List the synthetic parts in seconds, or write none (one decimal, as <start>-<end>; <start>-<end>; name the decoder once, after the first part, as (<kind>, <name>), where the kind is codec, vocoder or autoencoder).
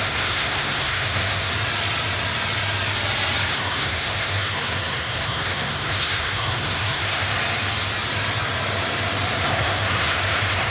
0.0-1.5 (codec, SNAC); 3.5-7.3; 9.4-10.7